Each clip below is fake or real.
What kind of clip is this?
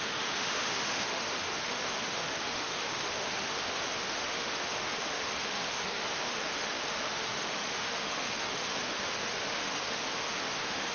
fake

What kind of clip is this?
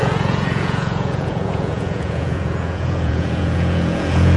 fake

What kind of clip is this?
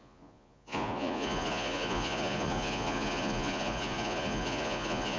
fake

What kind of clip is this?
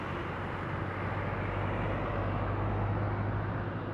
real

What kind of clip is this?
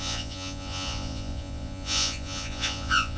fake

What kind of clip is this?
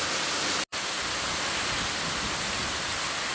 real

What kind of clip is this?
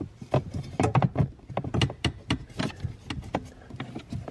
real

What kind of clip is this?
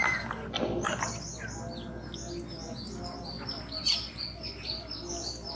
real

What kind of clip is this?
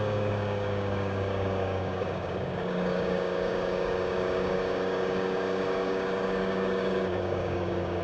fake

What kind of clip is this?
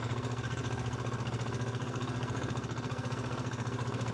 fake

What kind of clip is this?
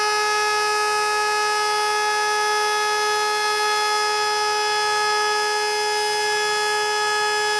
real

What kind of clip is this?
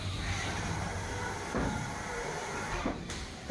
fake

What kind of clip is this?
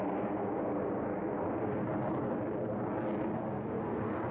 real